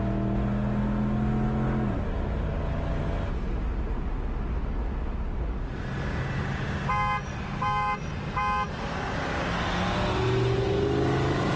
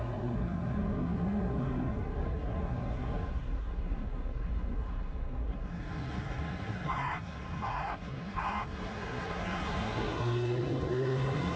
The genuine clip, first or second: first